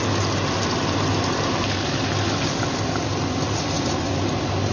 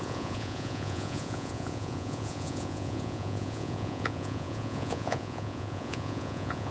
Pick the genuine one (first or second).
first